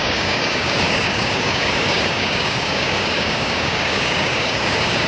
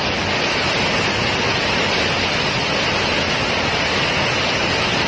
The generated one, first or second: first